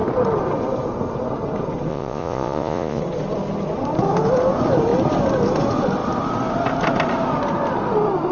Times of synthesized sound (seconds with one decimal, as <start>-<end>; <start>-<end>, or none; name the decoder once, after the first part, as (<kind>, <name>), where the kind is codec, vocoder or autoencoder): 1.9-3.0 (vocoder, Vocos)